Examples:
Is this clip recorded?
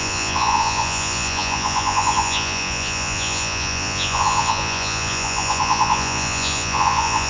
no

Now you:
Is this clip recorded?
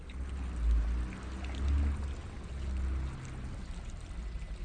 yes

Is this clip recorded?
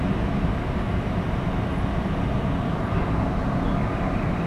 yes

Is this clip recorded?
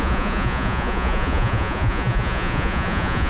no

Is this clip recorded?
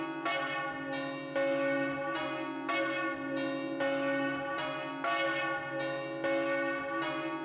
yes